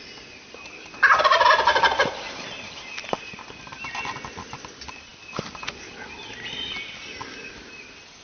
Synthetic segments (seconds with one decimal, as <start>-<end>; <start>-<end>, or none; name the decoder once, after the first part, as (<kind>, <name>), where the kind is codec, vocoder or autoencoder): none